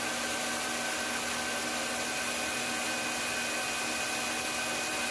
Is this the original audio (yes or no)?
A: yes